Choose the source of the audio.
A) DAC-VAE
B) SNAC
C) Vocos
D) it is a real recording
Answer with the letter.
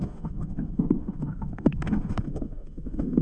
A